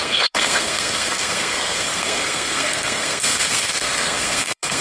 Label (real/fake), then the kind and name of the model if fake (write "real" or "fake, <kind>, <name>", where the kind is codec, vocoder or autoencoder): fake, codec, SNAC